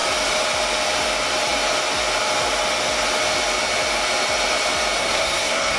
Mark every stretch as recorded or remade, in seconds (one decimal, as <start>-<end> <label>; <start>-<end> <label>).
0.0-5.0 recorded; 5.0-5.8 remade